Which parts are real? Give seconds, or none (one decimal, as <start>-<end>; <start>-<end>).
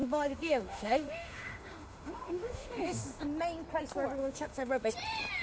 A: 3.2-4.2; 4.9-5.4